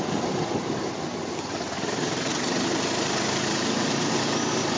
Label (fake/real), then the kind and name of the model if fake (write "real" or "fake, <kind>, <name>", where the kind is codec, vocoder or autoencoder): real